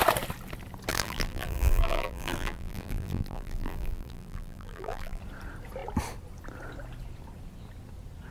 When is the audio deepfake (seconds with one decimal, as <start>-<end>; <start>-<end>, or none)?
0.9-5.2